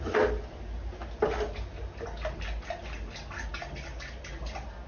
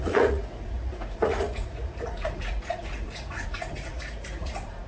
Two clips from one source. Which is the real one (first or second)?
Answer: first